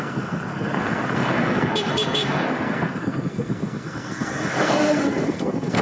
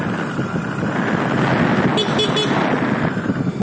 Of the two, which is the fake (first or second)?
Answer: first